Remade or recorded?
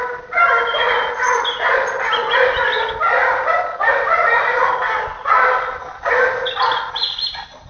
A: recorded